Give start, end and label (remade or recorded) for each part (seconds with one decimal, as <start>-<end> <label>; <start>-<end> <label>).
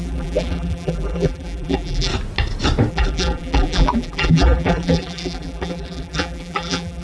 0.0-2.1 remade; 2.1-2.9 recorded; 2.9-7.0 remade